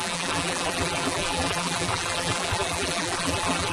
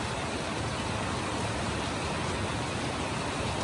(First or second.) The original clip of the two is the second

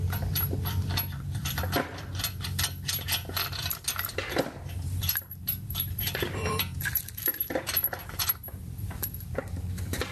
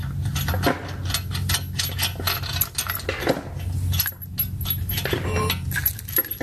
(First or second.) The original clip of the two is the second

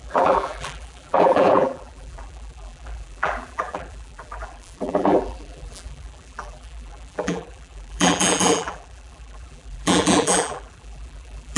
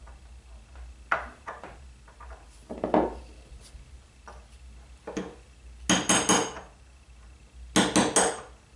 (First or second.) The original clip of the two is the second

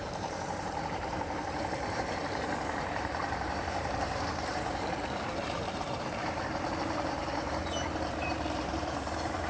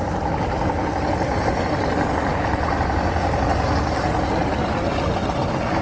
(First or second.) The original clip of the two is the second